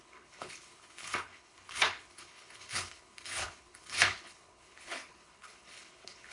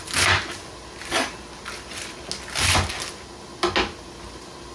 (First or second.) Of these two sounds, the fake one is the first